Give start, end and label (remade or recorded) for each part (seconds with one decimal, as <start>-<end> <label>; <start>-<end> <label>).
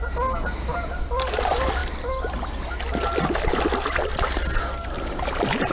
0.0-5.7 recorded